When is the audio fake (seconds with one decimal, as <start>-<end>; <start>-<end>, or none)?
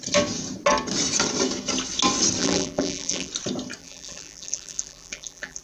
2.4-3.3; 3.8-5.6